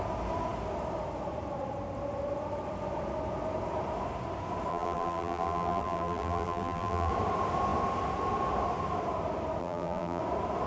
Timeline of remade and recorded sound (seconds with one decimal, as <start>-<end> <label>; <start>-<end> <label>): 0.0-4.7 recorded; 4.7-7.1 remade; 7.1-9.6 recorded; 9.6-10.2 remade; 10.2-10.7 recorded